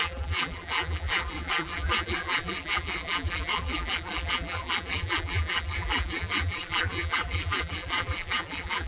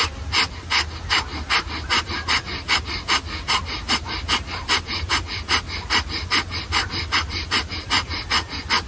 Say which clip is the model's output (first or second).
first